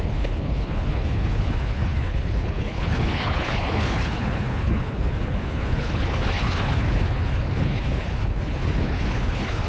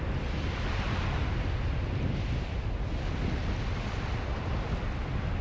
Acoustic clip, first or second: second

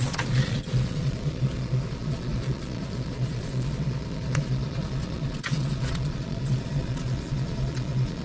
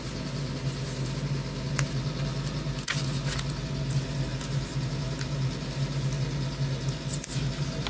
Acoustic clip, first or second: second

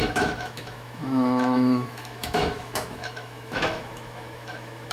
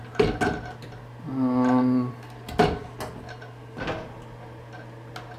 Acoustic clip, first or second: second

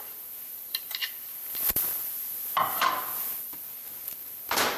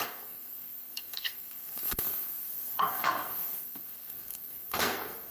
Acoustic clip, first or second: first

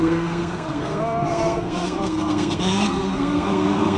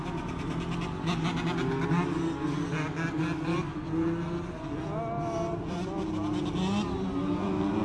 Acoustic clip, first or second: second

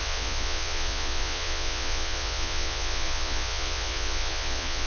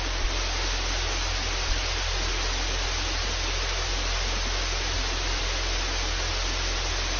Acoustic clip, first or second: second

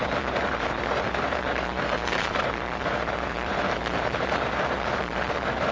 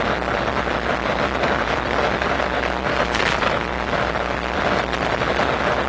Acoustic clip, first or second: second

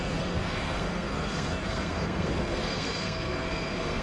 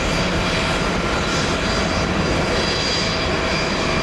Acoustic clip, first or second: second